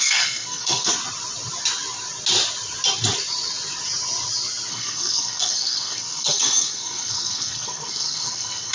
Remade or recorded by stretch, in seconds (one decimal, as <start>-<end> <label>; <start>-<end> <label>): 0.0-0.9 remade; 0.9-4.7 recorded; 4.7-8.7 remade